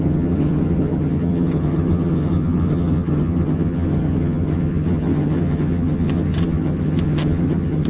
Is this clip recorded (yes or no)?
no